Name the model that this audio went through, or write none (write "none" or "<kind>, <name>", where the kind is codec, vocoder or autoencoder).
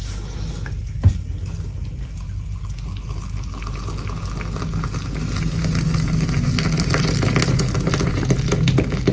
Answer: none